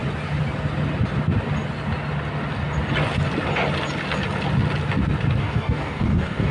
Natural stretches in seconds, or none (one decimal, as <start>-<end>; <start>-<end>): 0.0-5.4